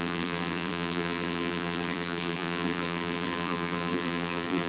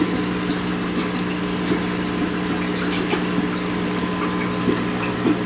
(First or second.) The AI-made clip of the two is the first